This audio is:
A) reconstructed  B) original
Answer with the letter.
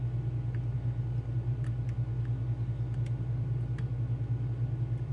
B